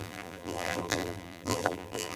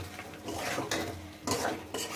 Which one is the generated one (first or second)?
first